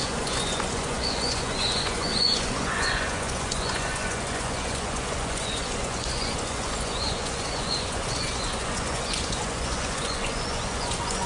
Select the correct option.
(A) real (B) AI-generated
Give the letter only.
B